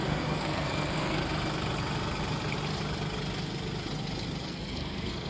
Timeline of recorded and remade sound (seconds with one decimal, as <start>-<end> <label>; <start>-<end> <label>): 0.0-1.2 remade; 1.2-4.4 recorded; 4.4-5.3 remade